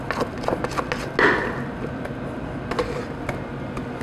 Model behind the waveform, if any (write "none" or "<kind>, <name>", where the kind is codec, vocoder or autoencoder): none